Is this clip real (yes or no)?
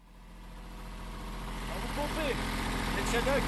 yes